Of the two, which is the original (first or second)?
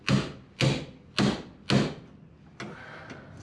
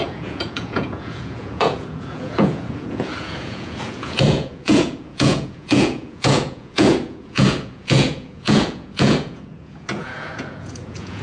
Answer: first